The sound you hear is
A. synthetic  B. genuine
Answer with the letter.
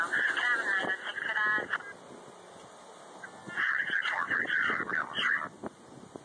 B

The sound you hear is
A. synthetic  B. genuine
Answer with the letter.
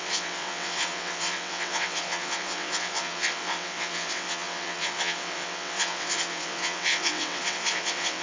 A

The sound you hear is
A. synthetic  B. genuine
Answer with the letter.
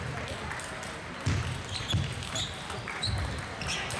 B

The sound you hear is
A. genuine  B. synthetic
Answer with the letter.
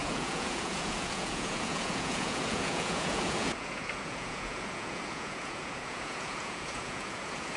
B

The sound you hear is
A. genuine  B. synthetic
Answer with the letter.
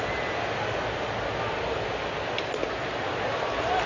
A